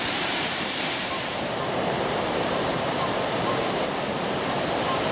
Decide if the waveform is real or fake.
fake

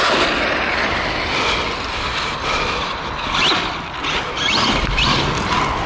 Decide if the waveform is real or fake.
real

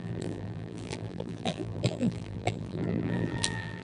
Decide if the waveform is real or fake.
fake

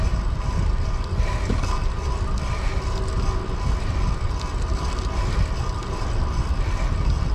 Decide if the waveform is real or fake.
real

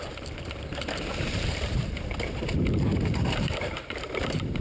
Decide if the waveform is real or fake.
fake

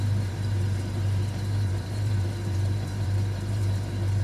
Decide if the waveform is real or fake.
fake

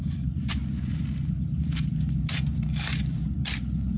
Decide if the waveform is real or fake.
fake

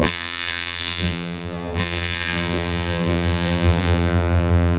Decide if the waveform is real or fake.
fake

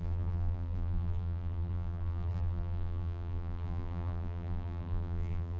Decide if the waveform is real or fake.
fake